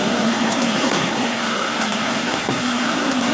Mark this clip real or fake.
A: fake